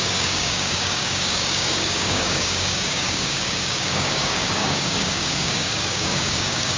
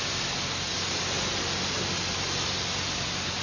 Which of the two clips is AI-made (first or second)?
first